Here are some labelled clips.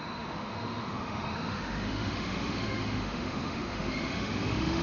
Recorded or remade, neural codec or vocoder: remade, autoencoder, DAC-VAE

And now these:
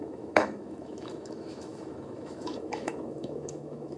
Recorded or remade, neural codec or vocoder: remade, autoencoder, DAC-VAE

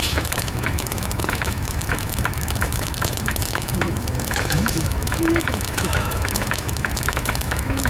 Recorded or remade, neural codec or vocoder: remade, autoencoder, DAC-VAE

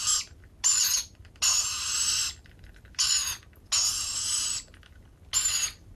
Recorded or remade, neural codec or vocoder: recorded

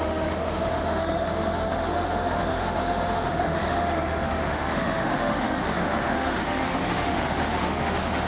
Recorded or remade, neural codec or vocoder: remade, autoencoder, DAC-VAE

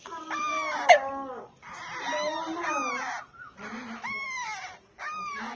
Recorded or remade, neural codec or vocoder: recorded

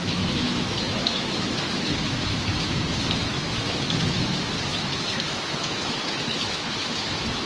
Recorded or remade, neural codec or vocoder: remade, autoencoder, DAC-VAE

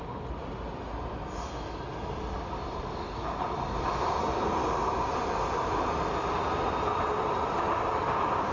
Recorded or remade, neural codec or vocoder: recorded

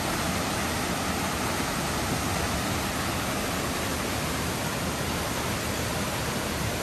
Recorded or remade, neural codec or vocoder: recorded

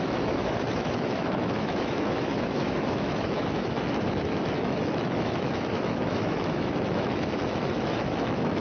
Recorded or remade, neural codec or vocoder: remade, autoencoder, DAC-VAE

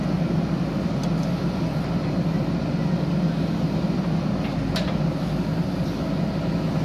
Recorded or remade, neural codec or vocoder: recorded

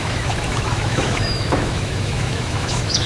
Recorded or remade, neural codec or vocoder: remade, autoencoder, DAC-VAE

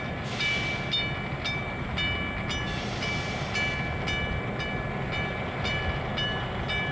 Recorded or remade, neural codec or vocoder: recorded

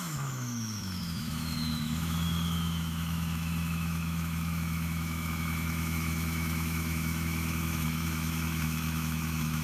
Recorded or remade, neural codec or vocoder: remade, autoencoder, DAC-VAE